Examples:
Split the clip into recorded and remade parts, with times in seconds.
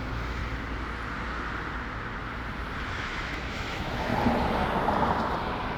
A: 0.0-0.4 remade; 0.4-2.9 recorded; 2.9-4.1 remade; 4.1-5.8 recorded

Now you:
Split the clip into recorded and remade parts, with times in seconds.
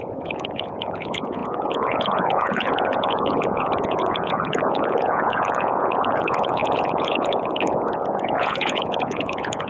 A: 0.0-9.7 remade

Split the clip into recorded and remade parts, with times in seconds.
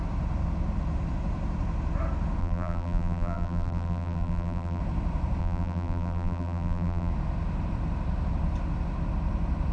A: 0.0-2.4 recorded; 2.4-4.8 remade; 4.8-5.4 recorded; 5.4-7.1 remade; 7.1-9.7 recorded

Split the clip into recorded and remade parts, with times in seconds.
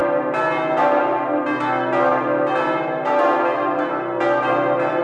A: 0.0-5.0 recorded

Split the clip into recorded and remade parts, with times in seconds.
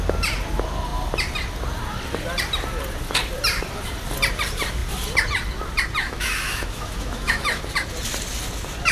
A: 0.0-6.0 recorded; 6.0-7.6 remade; 7.6-8.9 recorded